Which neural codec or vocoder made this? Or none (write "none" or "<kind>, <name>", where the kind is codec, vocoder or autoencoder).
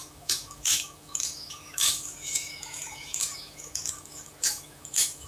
autoencoder, DAC-VAE